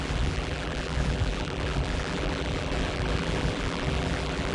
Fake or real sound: fake